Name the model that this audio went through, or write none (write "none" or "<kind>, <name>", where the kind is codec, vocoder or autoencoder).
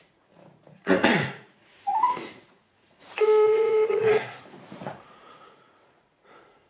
vocoder, Vocos